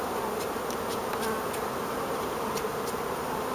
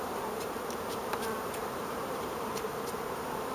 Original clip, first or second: first